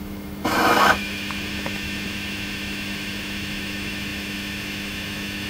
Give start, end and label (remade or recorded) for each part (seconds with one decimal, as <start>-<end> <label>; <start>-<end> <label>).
0.0-5.5 remade